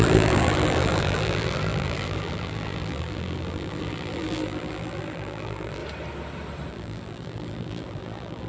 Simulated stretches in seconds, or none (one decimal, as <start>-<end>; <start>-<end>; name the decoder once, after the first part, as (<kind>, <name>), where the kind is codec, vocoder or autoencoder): 0.0-5.8 (vocoder, BigVGAN v2); 6.7-8.5